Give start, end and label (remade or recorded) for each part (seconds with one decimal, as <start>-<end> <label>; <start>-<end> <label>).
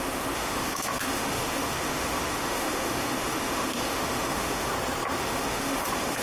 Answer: 0.0-4.7 remade; 4.7-5.2 recorded; 5.2-6.2 remade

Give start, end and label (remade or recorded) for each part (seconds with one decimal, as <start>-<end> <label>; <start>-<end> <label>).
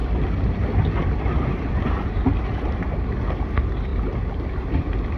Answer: 0.0-5.2 recorded